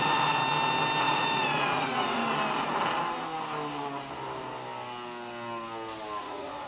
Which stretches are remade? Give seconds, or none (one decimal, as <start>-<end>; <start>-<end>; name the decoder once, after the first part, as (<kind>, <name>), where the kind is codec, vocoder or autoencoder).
0.0-0.4 (vocoder, Vocos); 1.0-2.2; 6.2-6.7